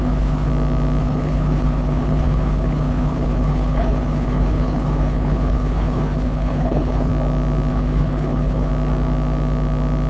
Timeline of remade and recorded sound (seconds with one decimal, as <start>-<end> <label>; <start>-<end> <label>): 0.0-0.5 remade; 0.5-1.0 recorded; 1.0-7.1 remade; 7.1-7.7 recorded; 7.7-8.7 remade; 8.7-10.1 recorded